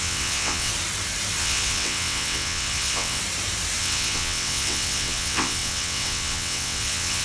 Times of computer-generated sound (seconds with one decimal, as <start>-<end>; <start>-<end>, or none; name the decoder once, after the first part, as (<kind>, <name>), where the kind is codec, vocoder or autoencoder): 0.0-0.7 (vocoder, WaveNeXt); 1.4-3.2; 3.8-7.2